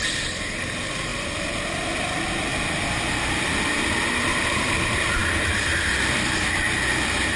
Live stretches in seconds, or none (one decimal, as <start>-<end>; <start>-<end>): 0.0-7.4